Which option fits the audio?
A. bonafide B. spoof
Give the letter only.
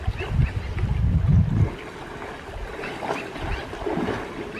A